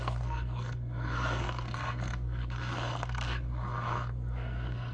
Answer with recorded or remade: remade